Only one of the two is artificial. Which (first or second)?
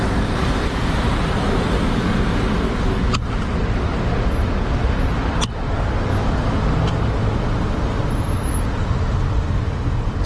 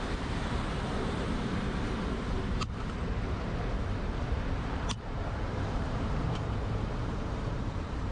second